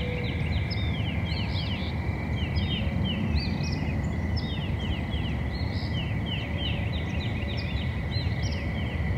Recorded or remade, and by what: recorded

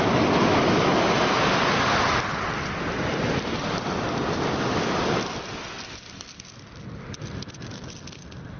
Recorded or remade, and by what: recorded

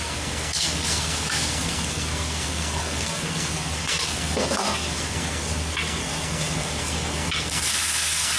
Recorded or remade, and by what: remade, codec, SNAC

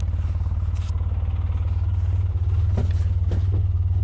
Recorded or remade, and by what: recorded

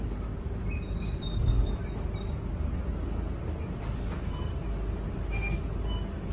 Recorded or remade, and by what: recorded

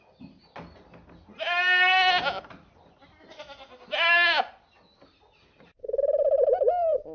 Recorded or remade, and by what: recorded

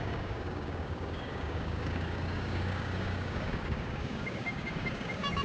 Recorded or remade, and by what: remade, codec, DAC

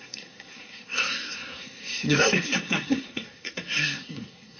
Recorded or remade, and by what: remade, codec, SNAC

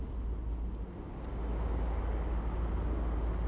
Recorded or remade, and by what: recorded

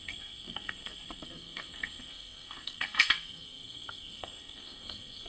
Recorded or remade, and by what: remade, codec, SNAC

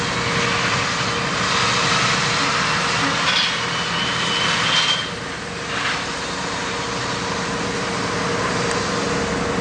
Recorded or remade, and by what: recorded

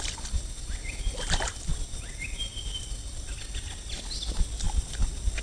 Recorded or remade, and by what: recorded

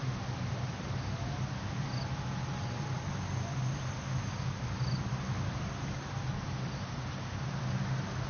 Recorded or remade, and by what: recorded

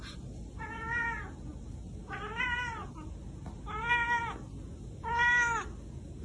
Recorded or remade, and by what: recorded